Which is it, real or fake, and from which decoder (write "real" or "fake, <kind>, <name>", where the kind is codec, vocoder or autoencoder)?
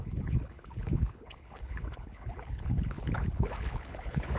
fake, codec, HILCodec